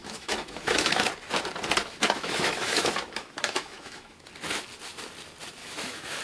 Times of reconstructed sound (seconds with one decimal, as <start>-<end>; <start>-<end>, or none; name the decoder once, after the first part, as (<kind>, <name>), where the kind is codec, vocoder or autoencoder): 0.0-1.1 (autoencoder, DAC-VAE); 1.8-4.3; 5.6-6.2